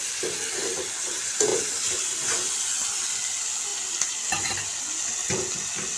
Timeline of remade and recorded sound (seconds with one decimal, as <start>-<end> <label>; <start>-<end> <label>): 0.0-6.0 recorded